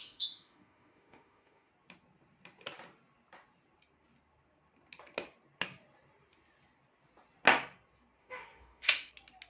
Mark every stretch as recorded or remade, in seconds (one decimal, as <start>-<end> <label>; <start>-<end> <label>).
0.0-1.7 remade; 1.7-8.2 recorded; 8.2-9.1 remade; 9.1-9.5 recorded